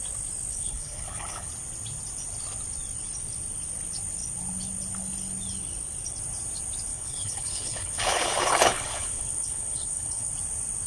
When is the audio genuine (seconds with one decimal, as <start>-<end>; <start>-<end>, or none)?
0.0-0.5; 1.5-6.9; 10.3-10.9